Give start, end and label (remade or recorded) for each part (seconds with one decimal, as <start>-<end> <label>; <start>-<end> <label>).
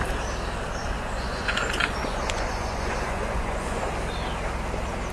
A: 0.0-0.8 recorded; 0.8-3.9 remade; 3.9-5.1 recorded